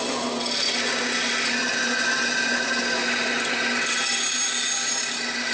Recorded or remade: recorded